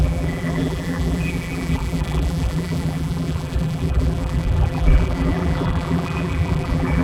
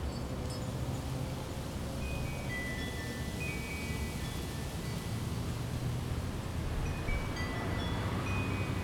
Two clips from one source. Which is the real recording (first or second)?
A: second